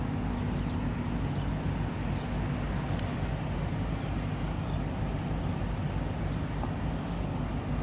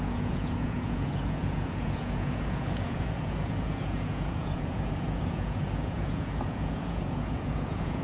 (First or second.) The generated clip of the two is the second